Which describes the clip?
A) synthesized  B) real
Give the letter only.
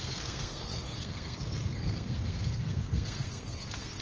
A